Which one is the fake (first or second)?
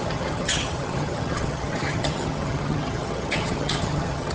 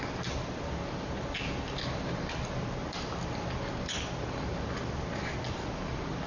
first